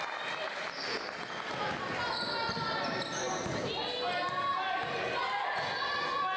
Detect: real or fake real